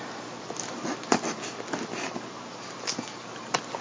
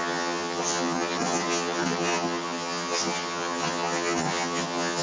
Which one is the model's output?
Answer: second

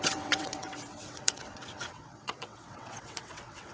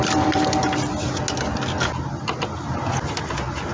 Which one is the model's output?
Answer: first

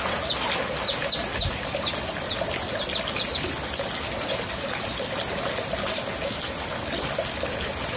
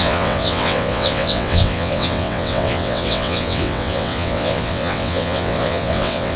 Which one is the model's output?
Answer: second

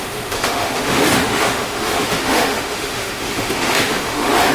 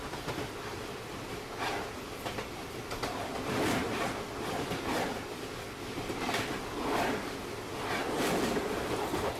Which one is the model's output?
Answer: first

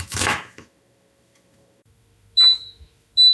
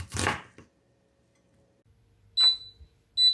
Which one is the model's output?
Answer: first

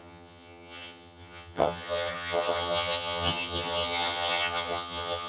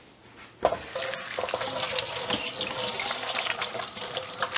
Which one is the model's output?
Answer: first